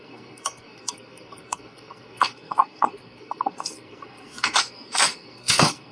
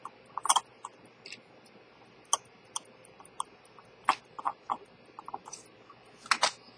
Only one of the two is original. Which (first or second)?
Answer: second